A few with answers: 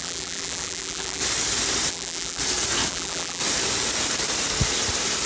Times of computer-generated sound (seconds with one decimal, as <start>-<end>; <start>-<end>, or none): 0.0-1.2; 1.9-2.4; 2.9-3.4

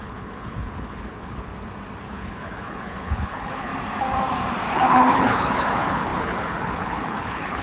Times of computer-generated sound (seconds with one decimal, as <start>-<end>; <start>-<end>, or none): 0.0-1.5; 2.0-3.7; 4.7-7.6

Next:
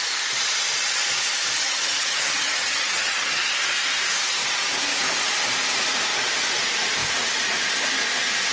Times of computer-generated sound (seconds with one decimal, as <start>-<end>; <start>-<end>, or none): 1.6-3.5

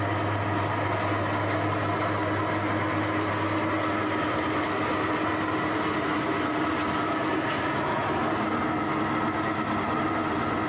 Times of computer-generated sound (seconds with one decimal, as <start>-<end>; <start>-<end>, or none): none